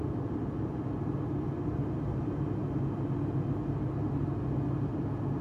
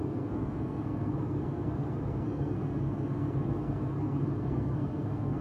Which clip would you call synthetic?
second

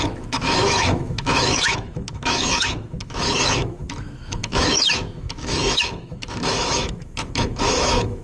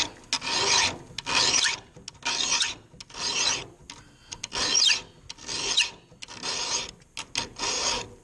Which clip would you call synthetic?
first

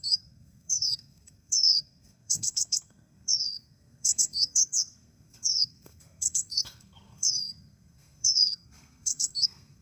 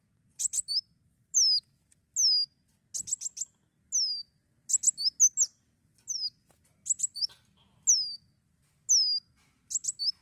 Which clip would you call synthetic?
first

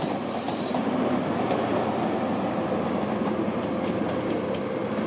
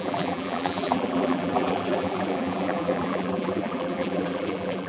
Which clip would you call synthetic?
second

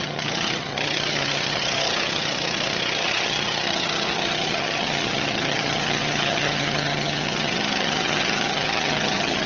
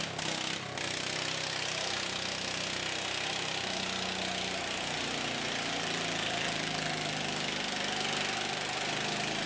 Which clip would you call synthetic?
first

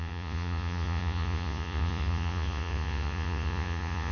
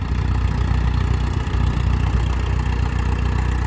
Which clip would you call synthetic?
first